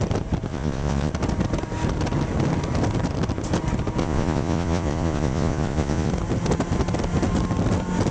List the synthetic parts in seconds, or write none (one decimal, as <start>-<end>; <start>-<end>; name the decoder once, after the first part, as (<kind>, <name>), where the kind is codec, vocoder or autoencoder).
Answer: 0.5-1.1 (vocoder, Vocos); 4.0-6.1